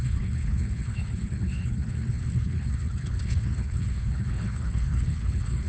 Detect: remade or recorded remade